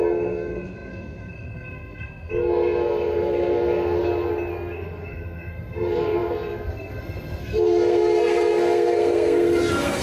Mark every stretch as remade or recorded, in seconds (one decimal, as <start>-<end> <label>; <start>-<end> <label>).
0.0-4.0 remade; 4.0-4.5 recorded; 4.5-10.0 remade